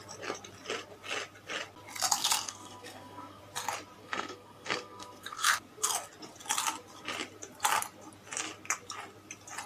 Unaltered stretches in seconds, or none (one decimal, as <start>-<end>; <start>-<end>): 0.0-2.2; 3.4-4.0; 5.6-9.7

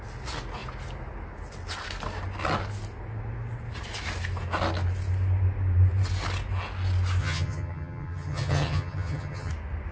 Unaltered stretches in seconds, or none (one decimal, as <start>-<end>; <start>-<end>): 0.0-7.2; 9.5-9.9

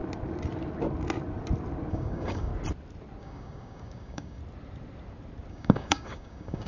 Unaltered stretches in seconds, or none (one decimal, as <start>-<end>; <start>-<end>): 0.0-1.9; 2.5-3.2; 4.4-5.5

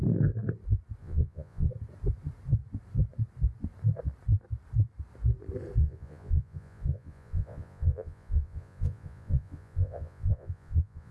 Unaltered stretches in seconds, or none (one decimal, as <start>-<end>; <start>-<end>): 0.0-1.0; 1.7-5.8

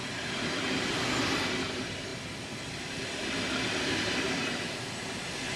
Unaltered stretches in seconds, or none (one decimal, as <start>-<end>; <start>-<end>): 0.0-5.6

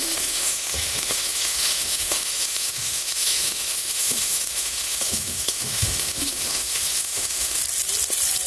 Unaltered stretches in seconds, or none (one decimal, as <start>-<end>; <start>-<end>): 7.6-8.5

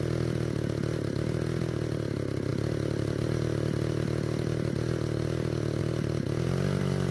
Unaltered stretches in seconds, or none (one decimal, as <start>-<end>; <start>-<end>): 0.0-7.1